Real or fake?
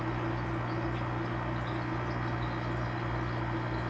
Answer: real